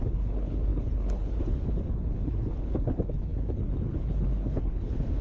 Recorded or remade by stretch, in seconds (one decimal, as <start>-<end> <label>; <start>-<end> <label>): 0.0-5.2 remade